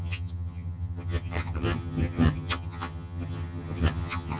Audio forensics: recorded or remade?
remade